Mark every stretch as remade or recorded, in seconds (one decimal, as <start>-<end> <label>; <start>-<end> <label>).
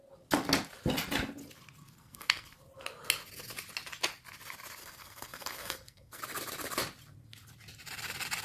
0.0-1.8 recorded; 1.8-2.6 remade; 2.6-4.8 recorded; 4.8-6.2 remade; 6.2-8.4 recorded